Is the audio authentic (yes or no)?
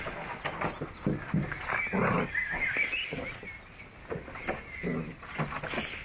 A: yes